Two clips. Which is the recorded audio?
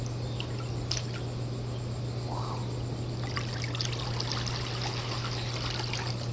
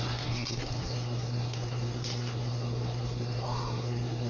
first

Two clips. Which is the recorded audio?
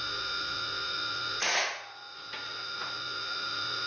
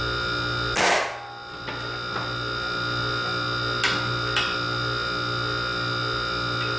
second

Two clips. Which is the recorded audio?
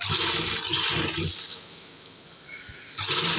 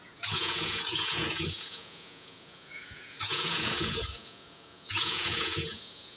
first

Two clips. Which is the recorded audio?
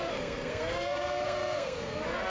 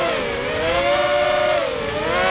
second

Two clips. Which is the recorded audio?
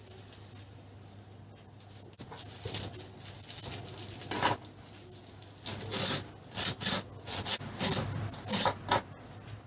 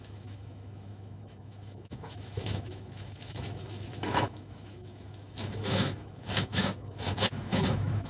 first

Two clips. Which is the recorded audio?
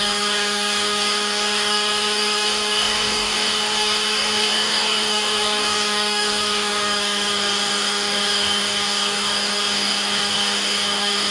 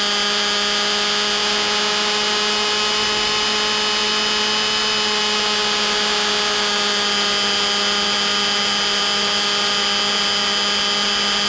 second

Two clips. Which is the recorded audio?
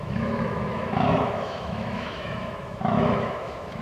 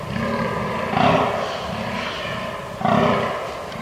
second